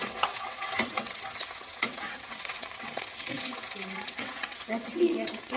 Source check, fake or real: fake